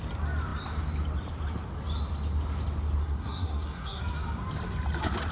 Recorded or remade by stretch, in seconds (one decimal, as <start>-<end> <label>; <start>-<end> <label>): 0.0-3.0 recorded; 3.0-4.0 remade; 4.0-5.3 recorded